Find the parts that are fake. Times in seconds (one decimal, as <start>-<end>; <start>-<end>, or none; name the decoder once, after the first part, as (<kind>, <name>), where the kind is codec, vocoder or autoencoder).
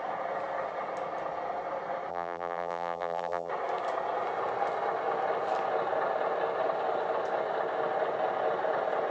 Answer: 2.1-3.5 (vocoder, BigVGAN v2)